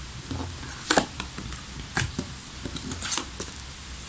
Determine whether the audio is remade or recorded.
recorded